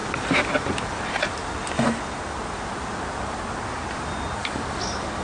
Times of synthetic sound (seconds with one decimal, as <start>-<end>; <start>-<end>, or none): 4.4-5.2

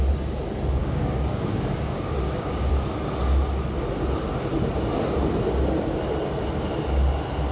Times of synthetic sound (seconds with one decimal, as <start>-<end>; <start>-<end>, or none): 0.8-2.7